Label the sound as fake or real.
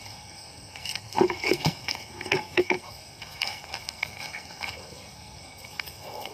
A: fake